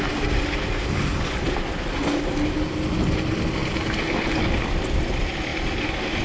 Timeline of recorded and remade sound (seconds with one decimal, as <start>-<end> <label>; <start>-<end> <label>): 0.0-6.2 recorded